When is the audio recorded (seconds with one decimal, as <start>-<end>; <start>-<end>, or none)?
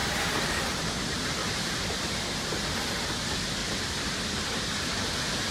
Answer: 0.6-1.4; 2.1-3.6